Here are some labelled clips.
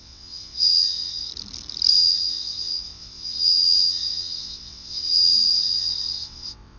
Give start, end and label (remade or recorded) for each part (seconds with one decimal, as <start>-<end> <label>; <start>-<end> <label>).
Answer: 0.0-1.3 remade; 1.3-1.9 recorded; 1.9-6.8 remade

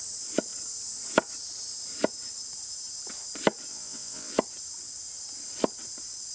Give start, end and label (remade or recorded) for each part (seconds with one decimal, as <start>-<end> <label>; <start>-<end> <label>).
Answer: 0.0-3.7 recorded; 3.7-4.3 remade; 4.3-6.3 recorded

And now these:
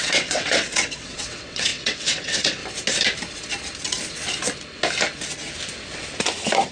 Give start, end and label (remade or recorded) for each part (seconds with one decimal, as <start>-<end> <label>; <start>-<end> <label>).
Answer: 0.0-2.6 remade; 2.6-6.7 recorded